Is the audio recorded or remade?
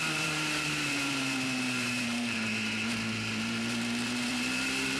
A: remade